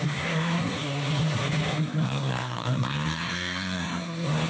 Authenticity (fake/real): fake